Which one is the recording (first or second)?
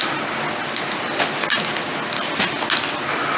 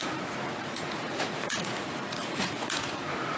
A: first